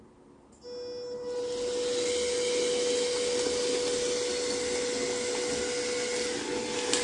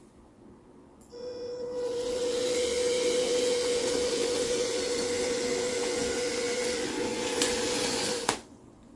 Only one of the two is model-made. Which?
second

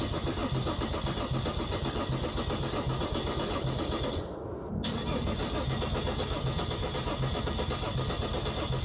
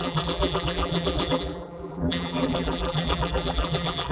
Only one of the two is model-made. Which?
second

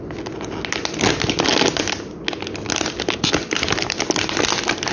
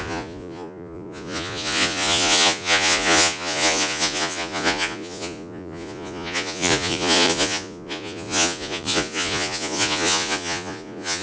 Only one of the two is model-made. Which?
second